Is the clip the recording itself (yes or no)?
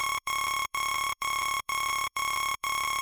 no